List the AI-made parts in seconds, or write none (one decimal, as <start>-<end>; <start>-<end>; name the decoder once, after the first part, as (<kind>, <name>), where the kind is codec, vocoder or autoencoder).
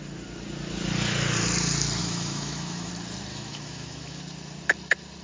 2.0-2.9 (autoencoder, DAC-VAE); 3.3-4.2